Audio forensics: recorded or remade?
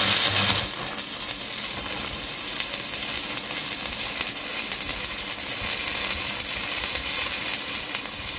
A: recorded